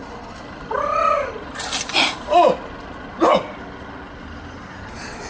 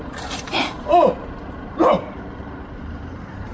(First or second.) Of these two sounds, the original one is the first